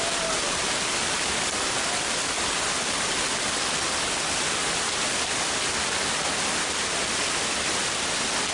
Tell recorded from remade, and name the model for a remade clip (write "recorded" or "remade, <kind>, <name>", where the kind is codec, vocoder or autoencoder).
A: recorded